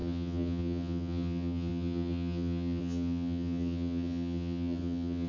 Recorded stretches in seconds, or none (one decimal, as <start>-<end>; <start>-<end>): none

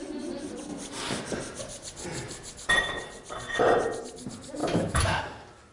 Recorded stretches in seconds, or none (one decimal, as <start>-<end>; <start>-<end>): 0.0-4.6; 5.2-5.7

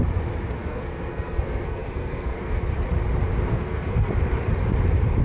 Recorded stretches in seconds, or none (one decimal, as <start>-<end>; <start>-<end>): 0.0-0.6; 2.6-3.5; 4.1-5.2